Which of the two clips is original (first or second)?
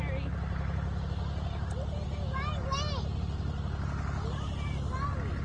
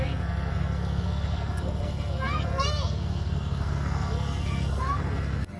first